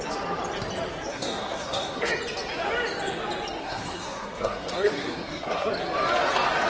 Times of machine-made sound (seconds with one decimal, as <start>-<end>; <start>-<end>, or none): 1.1-2.1; 3.6-5.7